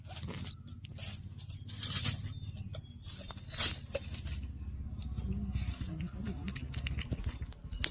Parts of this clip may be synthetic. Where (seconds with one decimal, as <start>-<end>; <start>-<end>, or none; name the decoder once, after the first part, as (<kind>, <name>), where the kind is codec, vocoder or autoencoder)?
0.9-2.1 (vocoder, BigVGAN v2)